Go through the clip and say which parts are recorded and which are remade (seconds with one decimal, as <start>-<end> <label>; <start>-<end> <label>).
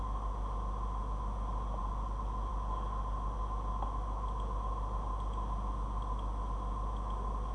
0.0-7.5 recorded